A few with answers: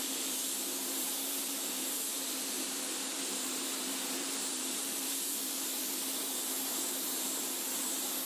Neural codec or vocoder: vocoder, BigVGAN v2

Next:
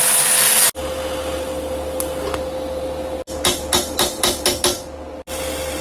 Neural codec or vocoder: none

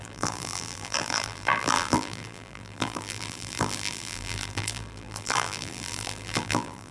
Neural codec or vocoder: vocoder, BigVGAN v2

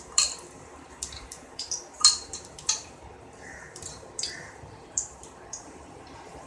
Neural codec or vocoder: vocoder, BigVGAN v2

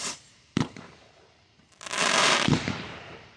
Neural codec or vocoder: vocoder, BigVGAN v2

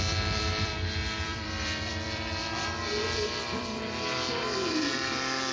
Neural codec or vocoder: vocoder, BigVGAN v2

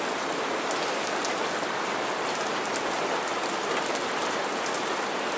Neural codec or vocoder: none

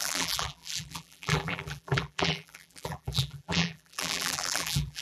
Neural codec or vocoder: vocoder, BigVGAN v2